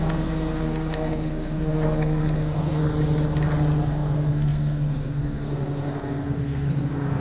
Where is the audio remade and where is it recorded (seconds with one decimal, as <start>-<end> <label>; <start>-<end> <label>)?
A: 0.0-2.8 remade; 2.8-3.9 recorded; 3.9-7.2 remade